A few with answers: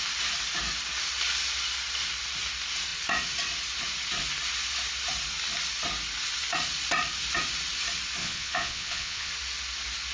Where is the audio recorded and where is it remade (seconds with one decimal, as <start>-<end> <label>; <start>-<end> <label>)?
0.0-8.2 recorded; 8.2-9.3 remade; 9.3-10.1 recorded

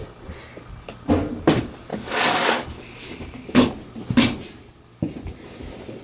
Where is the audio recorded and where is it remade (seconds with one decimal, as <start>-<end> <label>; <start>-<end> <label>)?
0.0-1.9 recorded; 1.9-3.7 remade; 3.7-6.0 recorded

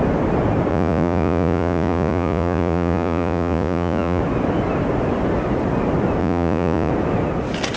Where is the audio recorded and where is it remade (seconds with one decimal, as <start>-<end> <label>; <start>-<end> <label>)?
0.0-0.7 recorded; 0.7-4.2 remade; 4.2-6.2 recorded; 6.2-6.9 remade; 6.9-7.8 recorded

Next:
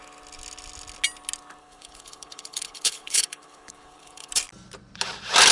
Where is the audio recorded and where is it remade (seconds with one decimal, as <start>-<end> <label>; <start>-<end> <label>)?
0.0-1.6 recorded; 1.6-4.3 remade; 4.3-5.5 recorded

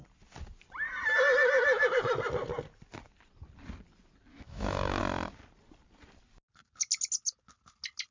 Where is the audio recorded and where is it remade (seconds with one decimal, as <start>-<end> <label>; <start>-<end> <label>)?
0.0-4.3 recorded; 4.3-5.0 remade; 5.0-8.1 recorded

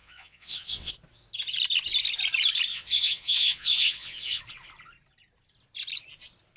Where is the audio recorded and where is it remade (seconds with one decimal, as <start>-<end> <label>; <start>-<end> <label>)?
0.0-0.9 remade; 0.9-2.7 recorded; 2.7-4.4 remade; 4.4-6.6 recorded